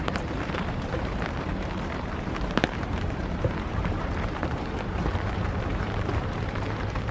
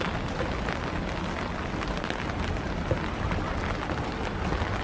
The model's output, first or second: first